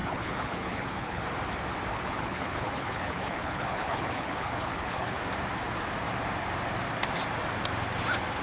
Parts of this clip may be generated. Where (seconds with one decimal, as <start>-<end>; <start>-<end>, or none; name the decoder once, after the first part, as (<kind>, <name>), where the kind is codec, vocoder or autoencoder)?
0.0-1.2 (codec, HILCodec); 1.9-5.2